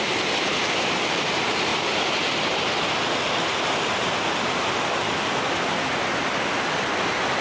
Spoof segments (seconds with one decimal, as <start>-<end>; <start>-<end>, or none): none